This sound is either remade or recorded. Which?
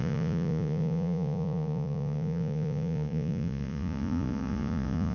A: remade